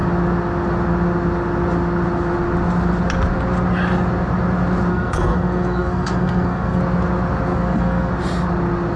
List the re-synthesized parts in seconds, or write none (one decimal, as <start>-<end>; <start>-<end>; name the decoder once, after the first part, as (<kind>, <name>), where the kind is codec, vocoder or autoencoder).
4.9-6.8 (codec, SNAC); 7.5-8.1